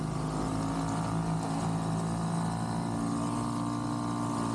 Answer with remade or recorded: recorded